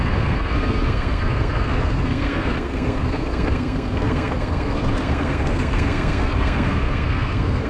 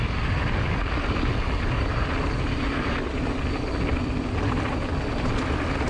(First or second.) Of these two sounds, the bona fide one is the second